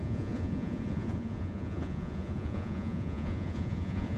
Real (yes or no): no